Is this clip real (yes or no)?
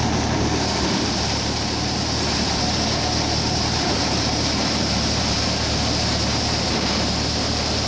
no